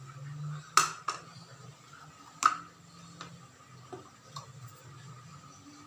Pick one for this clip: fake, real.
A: real